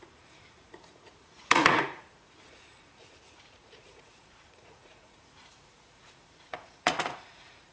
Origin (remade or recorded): remade